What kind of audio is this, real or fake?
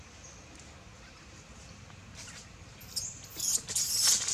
real